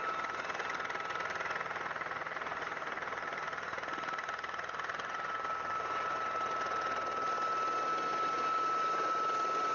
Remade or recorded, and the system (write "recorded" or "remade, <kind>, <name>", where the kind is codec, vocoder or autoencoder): recorded